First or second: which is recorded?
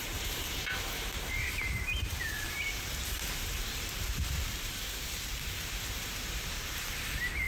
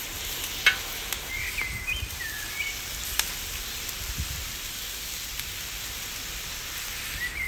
second